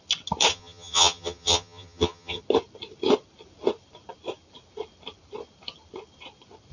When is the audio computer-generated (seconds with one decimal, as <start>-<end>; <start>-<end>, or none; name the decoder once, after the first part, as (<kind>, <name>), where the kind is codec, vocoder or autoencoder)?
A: 0.5-2.4 (vocoder, HiFi-GAN)

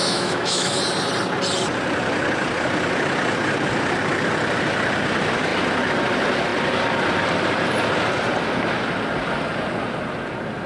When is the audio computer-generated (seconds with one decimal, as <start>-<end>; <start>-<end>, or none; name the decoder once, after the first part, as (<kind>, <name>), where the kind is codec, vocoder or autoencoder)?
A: 0.0-0.8 (autoencoder, DAC-VAE)